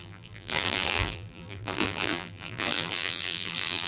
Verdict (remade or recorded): remade